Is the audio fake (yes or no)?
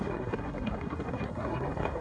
yes